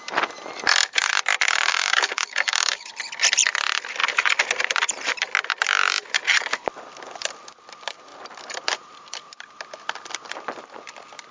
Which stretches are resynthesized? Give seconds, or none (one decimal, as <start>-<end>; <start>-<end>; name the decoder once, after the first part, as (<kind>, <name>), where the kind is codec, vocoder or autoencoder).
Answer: 1.7-2.9 (codec, DAC)